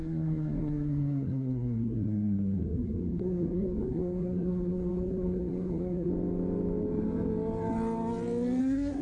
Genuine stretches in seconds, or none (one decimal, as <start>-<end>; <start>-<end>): 6.1-8.6